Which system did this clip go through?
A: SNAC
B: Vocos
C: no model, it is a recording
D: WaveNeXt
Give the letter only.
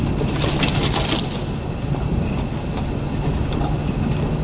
C